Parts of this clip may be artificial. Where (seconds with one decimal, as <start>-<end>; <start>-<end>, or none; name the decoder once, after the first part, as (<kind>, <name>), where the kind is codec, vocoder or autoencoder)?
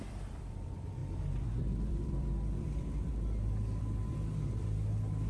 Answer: 0.0-3.1 (vocoder, BigVGAN v2); 3.8-5.3